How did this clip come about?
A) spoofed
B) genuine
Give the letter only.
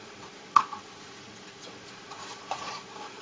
A